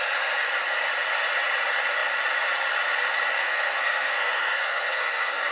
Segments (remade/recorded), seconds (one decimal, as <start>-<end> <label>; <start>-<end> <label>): 0.0-3.4 recorded; 3.4-5.5 remade